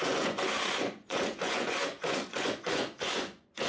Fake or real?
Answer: fake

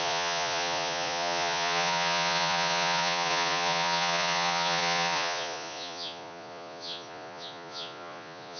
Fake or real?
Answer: fake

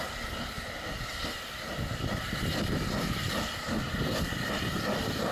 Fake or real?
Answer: real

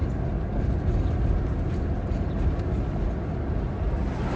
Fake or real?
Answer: real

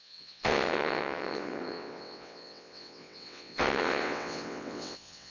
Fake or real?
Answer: fake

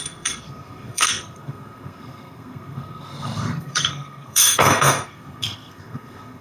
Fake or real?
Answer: fake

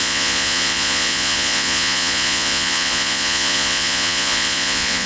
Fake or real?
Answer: fake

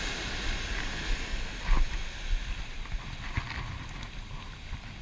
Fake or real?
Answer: real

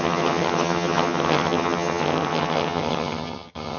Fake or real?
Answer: fake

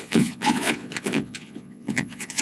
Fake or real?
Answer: fake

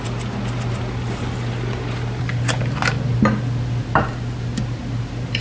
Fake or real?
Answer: real